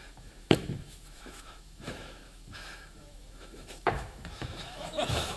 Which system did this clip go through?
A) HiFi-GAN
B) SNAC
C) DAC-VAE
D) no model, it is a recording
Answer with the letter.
C